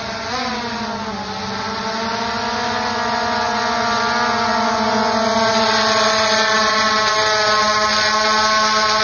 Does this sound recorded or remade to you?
recorded